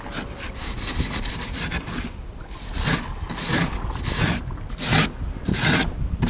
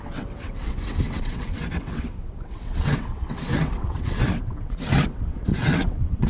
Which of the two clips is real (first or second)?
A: first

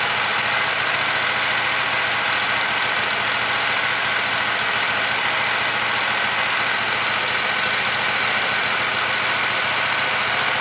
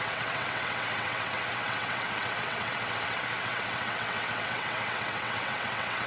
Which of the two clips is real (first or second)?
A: first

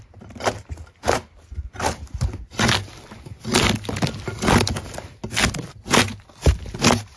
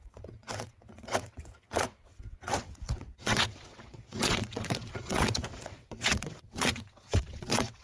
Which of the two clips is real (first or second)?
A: first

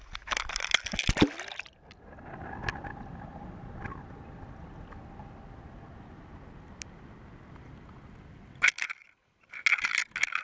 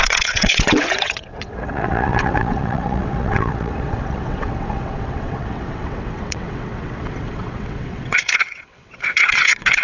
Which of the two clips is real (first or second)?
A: first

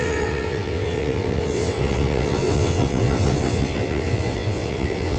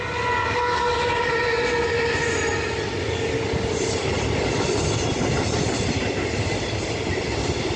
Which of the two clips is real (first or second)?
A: second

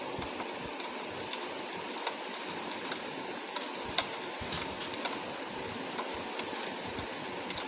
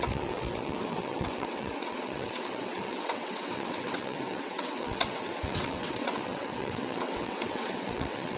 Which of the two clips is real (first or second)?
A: first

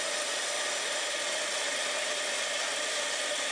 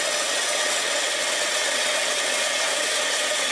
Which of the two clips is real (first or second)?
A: first